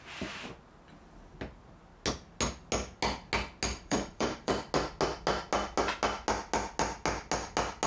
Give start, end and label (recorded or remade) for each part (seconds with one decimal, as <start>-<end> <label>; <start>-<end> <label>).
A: 0.0-3.7 recorded; 3.7-4.7 remade; 4.7-7.9 recorded